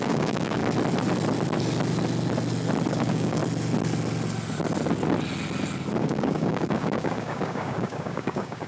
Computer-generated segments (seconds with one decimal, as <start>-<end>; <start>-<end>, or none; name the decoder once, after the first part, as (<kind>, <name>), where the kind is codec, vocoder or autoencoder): 0.0-0.6 (codec, DAC); 2.9-3.4; 6.0-8.7